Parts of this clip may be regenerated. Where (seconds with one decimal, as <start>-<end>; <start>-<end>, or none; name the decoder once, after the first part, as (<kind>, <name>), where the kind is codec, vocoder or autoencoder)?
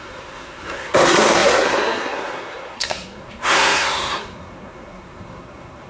0.0-5.9 (codec, SNAC)